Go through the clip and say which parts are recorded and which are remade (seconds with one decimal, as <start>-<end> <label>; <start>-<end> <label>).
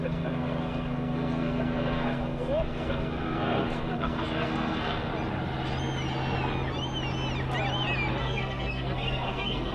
0.0-5.1 remade; 5.1-8.2 recorded; 8.2-9.7 remade